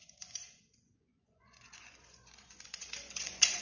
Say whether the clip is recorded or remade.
remade